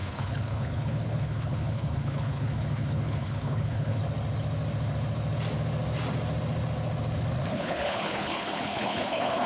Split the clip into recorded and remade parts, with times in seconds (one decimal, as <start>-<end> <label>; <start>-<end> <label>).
0.0-4.0 remade; 4.0-7.5 recorded; 7.5-9.5 remade